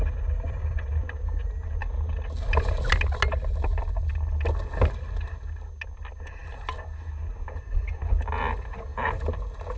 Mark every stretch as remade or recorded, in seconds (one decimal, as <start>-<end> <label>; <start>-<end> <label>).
0.0-9.8 recorded